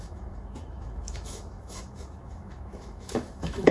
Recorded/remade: remade